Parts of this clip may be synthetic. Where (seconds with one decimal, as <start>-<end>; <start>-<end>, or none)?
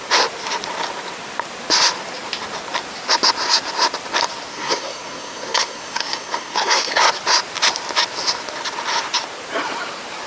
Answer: 4.5-7.1